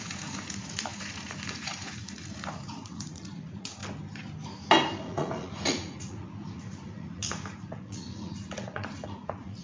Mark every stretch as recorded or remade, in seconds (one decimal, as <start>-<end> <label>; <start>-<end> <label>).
0.0-3.8 remade; 3.8-5.0 recorded; 5.0-9.6 remade